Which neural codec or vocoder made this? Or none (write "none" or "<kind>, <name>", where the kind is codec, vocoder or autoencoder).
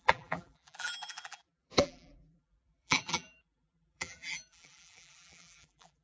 vocoder, BigVGAN v2